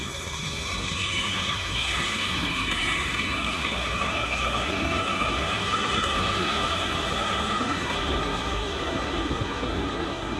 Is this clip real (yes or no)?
no